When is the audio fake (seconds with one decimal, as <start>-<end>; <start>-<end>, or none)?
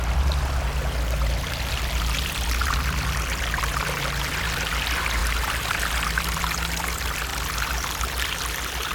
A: 2.6-3.7; 5.2-5.8; 7.3-8.0